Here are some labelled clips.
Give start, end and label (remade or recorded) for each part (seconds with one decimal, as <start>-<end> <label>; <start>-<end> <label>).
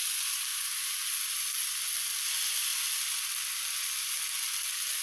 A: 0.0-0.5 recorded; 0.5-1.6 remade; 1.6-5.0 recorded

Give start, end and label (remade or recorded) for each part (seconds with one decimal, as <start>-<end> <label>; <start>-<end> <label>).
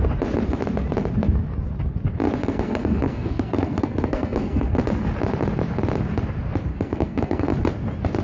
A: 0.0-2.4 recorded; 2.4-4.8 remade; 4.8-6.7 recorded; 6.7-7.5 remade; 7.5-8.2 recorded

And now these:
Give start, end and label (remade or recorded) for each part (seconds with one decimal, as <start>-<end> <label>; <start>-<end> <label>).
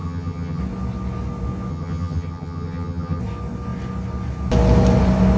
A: 0.0-0.6 remade; 0.6-1.7 recorded; 1.7-3.2 remade; 3.2-5.4 recorded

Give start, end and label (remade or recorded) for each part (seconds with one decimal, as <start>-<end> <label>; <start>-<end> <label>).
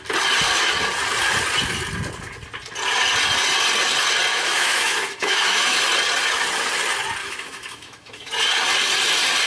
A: 0.0-4.3 recorded; 4.3-5.8 remade; 5.8-7.2 recorded; 7.2-8.3 remade; 8.3-9.5 recorded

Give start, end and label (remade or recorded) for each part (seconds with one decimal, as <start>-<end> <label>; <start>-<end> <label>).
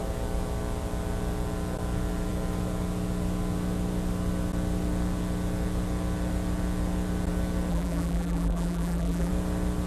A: 0.0-7.7 recorded; 7.7-9.3 remade; 9.3-9.9 recorded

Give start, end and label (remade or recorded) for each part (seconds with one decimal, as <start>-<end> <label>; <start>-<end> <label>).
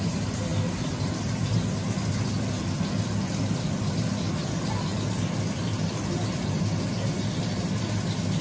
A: 0.0-8.4 recorded